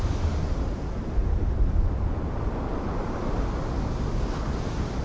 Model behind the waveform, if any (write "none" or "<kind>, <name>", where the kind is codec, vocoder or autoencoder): none